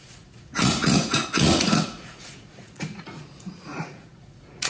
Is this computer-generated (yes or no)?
yes